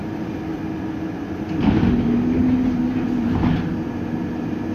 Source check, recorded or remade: recorded